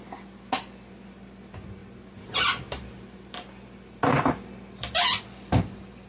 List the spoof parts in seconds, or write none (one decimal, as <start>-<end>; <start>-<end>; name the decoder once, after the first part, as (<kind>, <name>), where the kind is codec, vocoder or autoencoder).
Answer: none